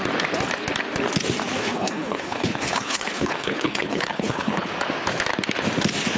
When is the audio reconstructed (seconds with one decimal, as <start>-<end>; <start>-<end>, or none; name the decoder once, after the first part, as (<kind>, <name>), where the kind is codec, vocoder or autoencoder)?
1.6-4.7 (codec, HILCodec)